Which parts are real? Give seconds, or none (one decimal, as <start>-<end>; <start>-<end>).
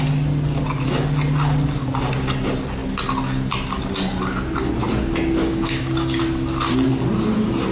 0.0-5.4; 6.2-7.7